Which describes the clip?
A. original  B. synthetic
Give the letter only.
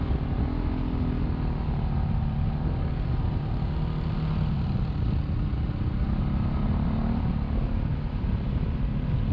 A